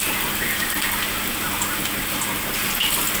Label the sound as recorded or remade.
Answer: recorded